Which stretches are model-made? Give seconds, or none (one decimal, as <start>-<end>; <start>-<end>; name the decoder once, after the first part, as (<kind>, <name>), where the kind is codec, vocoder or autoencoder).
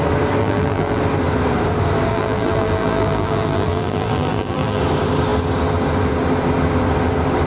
0.4-1.0 (vocoder, BigVGAN v2); 2.1-4.8